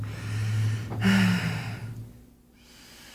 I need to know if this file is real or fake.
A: real